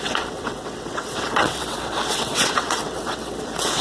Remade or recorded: remade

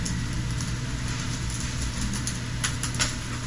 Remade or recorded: recorded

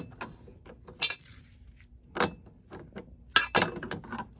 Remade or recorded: recorded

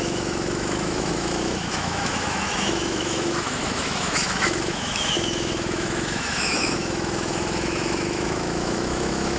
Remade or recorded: remade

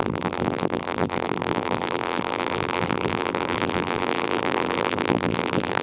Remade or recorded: remade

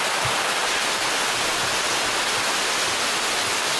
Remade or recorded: recorded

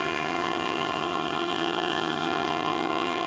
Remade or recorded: remade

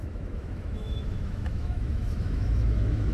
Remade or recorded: remade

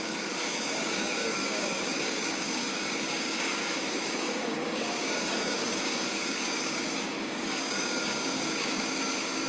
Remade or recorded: remade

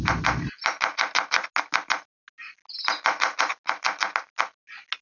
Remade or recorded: recorded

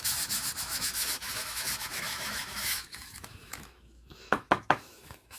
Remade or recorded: remade